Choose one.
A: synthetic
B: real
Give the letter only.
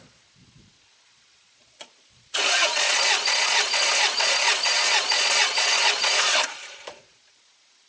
A